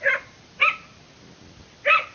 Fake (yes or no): no